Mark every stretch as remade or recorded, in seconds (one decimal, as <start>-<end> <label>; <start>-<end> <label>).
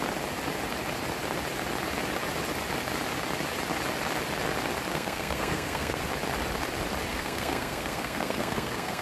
0.0-4.9 recorded; 4.9-6.0 remade; 6.0-7.1 recorded; 7.1-9.0 remade